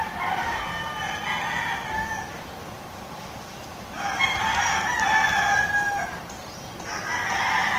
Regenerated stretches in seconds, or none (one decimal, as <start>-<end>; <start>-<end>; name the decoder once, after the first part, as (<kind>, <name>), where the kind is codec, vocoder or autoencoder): none